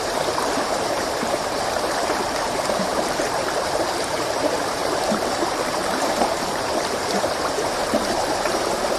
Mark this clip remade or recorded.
remade